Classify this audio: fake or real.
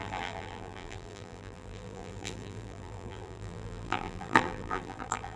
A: fake